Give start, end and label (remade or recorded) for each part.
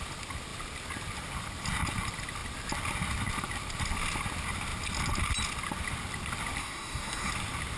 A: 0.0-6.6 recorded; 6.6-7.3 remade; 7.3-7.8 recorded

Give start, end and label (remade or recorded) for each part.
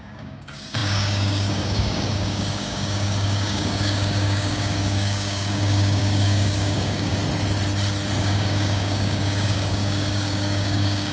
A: 0.0-7.2 remade; 7.2-8.2 recorded; 8.2-11.1 remade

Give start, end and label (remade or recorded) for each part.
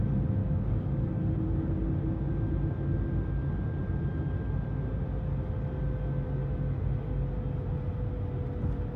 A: 0.0-0.4 recorded; 0.4-1.2 remade; 1.2-9.0 recorded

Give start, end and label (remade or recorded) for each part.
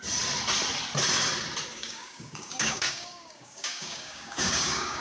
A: 0.0-1.7 recorded; 1.7-5.0 remade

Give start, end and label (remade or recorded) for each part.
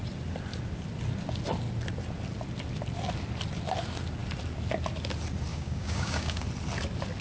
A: 0.0-5.5 recorded; 5.5-6.4 remade; 6.4-7.2 recorded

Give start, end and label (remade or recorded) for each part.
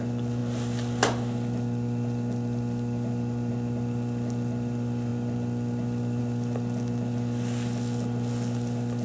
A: 0.0-9.0 recorded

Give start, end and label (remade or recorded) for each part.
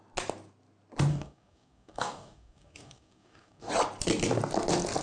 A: 0.0-1.1 recorded; 1.1-3.7 remade; 3.7-5.0 recorded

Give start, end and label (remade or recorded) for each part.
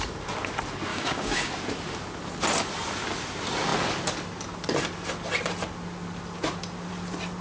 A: 0.0-0.9 recorded; 0.9-1.5 remade; 1.5-7.4 recorded